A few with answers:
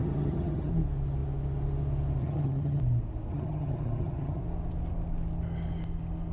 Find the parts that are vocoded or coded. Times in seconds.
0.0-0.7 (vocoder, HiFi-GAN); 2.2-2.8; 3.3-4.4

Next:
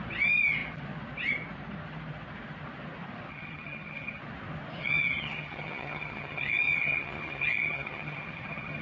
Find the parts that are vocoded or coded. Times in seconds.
3.3-4.2 (vocoder, HiFi-GAN); 4.8-8.8

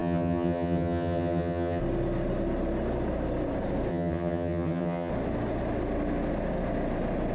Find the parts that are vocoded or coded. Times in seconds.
0.0-1.8 (vocoder, HiFi-GAN); 3.9-5.1

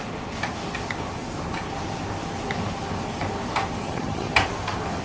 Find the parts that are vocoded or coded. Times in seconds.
3.8-4.3 (vocoder, HiFi-GAN)

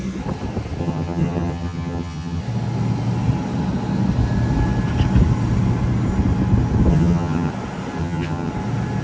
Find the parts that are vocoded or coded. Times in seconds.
0.8-2.4 (vocoder, HiFi-GAN); 6.9-7.5; 8.0-8.5

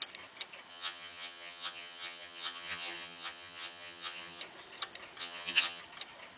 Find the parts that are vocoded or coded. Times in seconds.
0.7-4.4 (vocoder, HiFi-GAN); 5.2-5.8

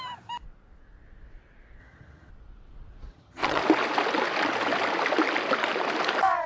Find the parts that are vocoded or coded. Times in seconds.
1.8-2.3 (vocoder, HiFi-GAN); 3.1-3.6

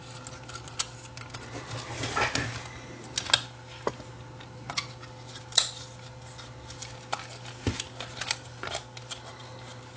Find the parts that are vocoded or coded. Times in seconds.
none